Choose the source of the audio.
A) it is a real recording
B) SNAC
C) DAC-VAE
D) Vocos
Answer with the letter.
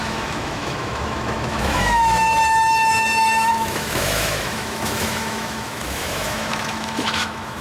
C